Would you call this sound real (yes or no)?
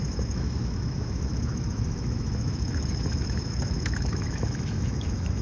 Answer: no